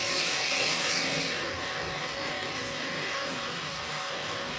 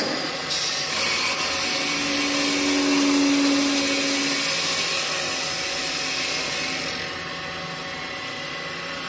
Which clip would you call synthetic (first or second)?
first